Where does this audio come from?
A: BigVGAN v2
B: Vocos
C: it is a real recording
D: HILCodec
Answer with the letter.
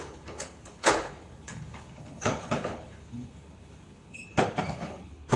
D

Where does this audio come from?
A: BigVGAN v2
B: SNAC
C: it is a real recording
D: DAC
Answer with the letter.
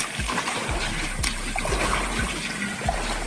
C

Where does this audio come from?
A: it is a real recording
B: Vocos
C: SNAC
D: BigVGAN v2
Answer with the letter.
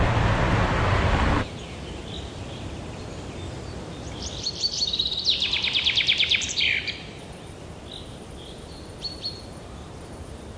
D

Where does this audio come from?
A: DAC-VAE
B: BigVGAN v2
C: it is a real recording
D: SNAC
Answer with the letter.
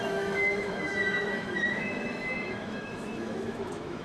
A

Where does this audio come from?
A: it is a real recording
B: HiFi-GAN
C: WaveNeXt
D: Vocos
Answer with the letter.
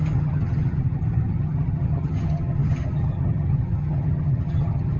B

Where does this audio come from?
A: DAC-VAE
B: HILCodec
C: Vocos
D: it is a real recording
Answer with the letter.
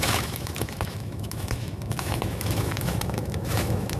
A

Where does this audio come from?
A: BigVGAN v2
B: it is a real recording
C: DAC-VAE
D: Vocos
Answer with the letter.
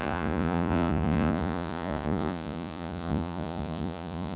D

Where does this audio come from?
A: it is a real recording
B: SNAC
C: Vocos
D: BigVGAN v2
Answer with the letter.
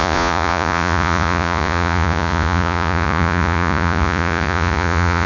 C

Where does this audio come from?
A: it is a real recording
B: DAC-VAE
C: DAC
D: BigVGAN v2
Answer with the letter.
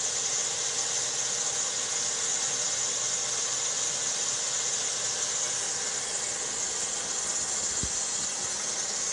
A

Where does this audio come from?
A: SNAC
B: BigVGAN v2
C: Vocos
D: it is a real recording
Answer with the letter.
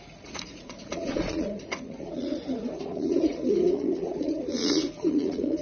C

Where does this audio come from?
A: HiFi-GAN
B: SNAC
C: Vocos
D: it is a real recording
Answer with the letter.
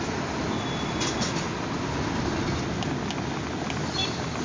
D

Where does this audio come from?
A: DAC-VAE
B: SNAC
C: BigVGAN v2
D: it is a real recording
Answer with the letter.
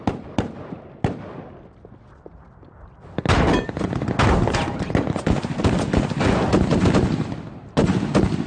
D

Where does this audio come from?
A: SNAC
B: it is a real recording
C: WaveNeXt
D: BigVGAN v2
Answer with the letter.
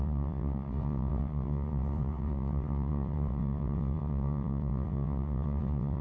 C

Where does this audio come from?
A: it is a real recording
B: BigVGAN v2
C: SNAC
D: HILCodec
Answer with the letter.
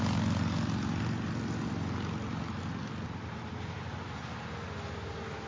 A